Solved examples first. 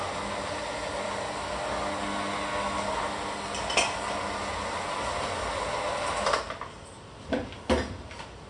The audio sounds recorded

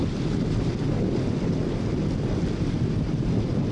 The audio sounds recorded